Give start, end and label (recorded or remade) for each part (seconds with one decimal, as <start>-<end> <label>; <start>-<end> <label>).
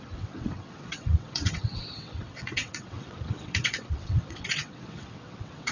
0.0-5.7 remade